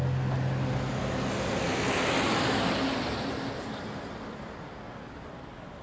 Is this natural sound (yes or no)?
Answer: yes